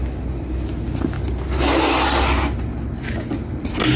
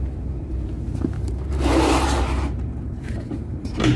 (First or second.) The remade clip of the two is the second